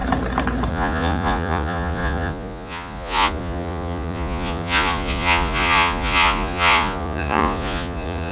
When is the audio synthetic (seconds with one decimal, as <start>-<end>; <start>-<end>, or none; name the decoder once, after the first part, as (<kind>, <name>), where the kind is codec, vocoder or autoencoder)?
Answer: 0.7-8.3 (vocoder, Vocos)